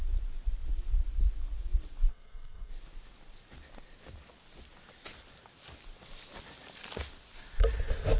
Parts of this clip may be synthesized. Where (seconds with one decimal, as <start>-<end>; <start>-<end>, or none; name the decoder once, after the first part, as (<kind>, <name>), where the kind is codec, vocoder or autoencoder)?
2.1-2.7 (codec, SNAC)